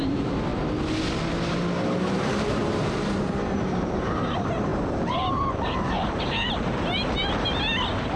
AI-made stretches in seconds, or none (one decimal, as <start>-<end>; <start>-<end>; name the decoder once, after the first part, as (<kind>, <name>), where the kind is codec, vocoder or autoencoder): 0.0-0.5 (vocoder, BigVGAN v2); 2.1-7.2